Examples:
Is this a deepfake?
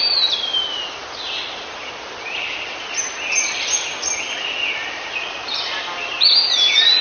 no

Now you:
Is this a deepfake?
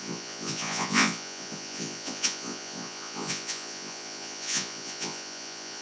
yes